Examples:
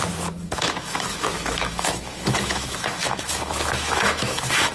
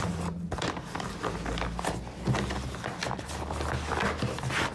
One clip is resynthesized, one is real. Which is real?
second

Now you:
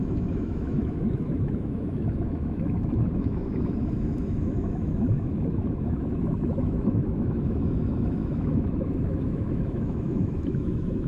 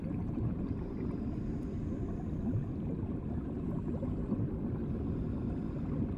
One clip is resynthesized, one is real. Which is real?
second